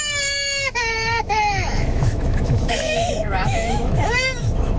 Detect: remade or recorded remade